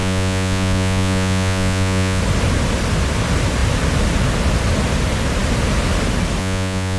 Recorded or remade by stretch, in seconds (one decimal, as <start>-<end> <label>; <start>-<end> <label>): 0.0-2.2 remade; 2.2-6.4 recorded; 6.4-7.0 remade